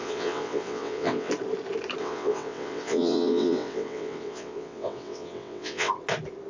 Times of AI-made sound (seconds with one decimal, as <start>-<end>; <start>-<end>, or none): 0.0-1.3; 2.0-5.9

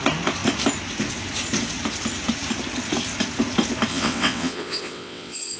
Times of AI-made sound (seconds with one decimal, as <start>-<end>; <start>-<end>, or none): 3.9-5.6

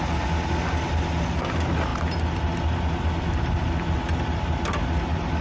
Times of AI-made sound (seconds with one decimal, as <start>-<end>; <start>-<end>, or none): none

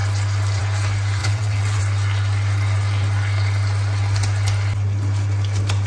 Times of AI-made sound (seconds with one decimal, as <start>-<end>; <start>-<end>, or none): 1.2-1.8